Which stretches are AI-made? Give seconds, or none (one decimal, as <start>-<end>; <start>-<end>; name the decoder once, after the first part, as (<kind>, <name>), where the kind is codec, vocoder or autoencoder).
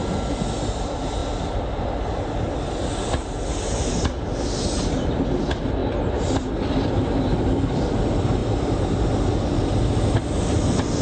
none